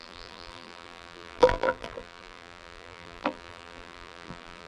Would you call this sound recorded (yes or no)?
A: no